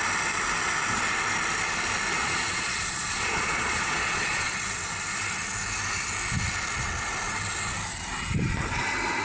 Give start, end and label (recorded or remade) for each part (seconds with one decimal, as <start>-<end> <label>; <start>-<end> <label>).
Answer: 0.0-2.2 recorded; 2.2-4.6 remade; 4.6-9.2 recorded